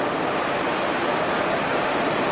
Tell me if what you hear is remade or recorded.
remade